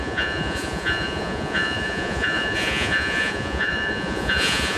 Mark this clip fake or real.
fake